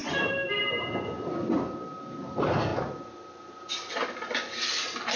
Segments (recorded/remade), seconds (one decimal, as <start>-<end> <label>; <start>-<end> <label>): 0.0-0.6 remade; 0.6-5.2 recorded